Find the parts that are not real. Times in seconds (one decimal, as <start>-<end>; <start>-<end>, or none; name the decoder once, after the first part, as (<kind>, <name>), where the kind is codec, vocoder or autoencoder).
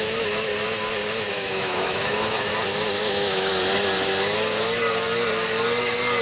0.0-0.5 (autoencoder, DAC-VAE); 1.3-2.5; 3.0-3.5